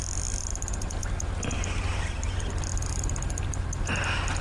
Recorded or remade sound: recorded